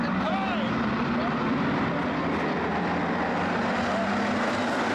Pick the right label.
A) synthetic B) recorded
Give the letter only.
B